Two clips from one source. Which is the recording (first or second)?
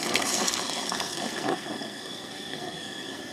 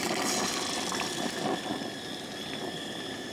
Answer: second